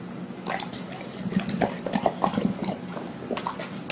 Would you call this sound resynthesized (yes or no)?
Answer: no